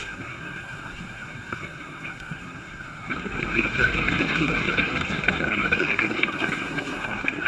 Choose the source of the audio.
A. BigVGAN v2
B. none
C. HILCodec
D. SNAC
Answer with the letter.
D